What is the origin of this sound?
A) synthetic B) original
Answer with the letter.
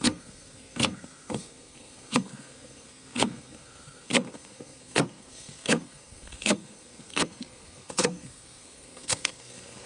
A